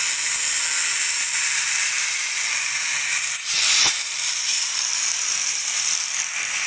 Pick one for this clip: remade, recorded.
remade